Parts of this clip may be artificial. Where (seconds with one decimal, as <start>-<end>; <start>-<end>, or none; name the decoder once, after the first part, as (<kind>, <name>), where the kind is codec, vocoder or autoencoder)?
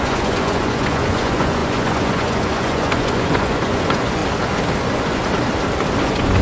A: 0.0-4.2 (vocoder, Vocos); 4.8-5.2; 6.0-6.4